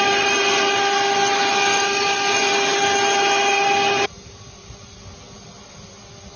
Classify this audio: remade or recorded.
recorded